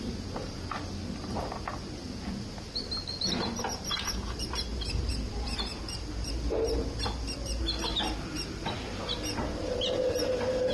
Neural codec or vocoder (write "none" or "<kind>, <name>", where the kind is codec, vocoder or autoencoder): none